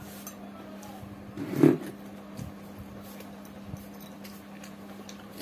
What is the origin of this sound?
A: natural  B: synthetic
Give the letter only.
A